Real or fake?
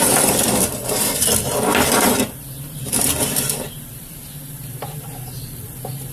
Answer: fake